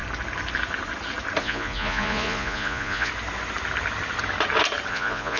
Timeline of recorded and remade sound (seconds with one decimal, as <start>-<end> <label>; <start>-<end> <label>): 0.0-1.4 recorded; 1.4-3.1 remade; 3.1-4.9 recorded; 4.9-5.4 remade